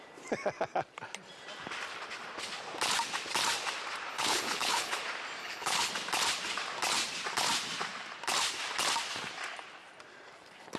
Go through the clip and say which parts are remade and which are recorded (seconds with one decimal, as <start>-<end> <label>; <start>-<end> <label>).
0.0-4.1 recorded; 4.1-5.0 remade; 5.0-5.4 recorded; 5.4-5.9 remade; 5.9-10.8 recorded